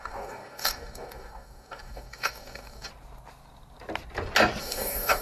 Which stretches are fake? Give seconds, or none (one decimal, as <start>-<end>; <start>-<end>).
0.0-2.9; 4.6-5.2